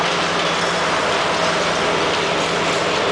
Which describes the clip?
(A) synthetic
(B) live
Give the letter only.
B